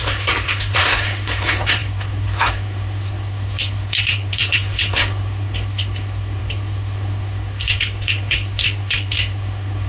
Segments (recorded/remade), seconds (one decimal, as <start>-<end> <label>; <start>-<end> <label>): 0.0-9.9 remade

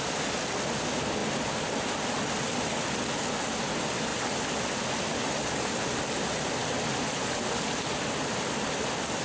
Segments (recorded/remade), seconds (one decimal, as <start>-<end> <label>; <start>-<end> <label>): 0.0-9.2 recorded

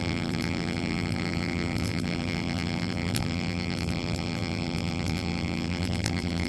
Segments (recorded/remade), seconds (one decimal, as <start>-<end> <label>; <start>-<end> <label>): 0.0-6.5 remade